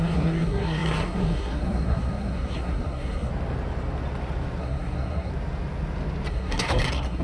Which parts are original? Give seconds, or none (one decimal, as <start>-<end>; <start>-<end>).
3.3-4.6; 5.3-6.3